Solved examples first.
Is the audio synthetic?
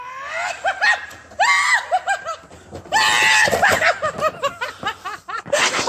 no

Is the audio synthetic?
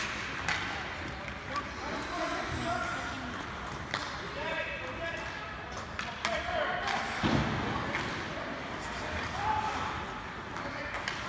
no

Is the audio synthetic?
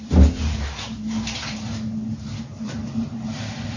yes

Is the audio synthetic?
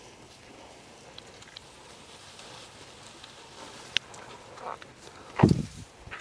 no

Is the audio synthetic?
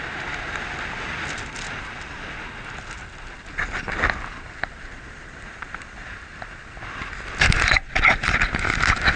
no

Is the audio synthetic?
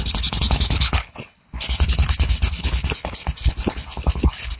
yes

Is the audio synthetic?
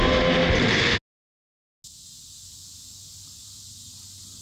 no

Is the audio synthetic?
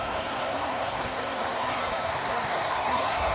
yes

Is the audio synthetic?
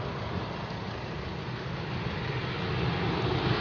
no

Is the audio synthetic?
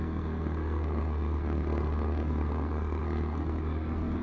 yes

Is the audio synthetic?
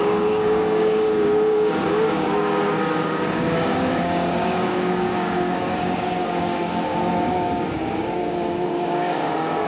yes